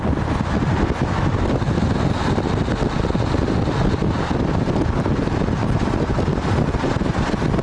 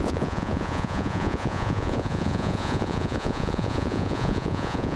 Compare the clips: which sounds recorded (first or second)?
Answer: first